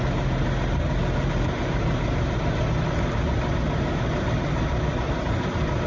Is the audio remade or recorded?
recorded